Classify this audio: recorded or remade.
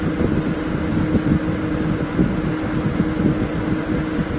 recorded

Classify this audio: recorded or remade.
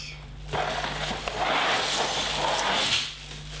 recorded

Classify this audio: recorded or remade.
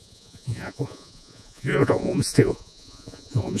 remade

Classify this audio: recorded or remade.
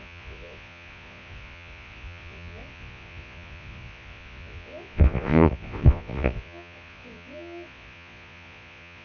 remade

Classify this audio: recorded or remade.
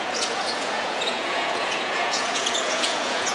remade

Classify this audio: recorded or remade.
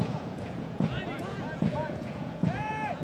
remade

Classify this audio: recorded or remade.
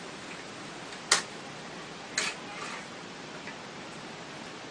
recorded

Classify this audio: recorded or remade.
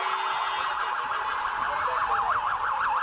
recorded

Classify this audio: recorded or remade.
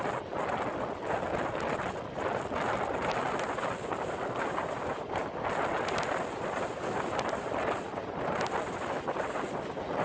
recorded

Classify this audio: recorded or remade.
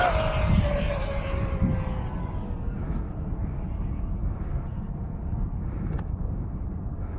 recorded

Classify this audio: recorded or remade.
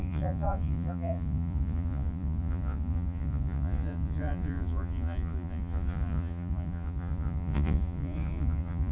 remade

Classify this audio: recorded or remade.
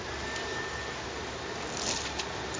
recorded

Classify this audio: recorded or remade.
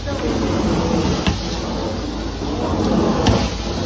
recorded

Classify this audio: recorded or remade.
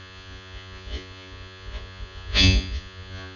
remade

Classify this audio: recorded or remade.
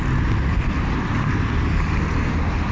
recorded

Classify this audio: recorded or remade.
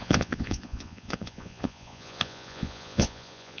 remade